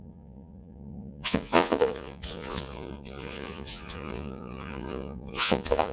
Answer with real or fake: fake